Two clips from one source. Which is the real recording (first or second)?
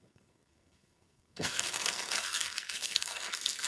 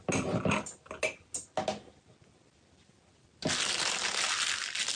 second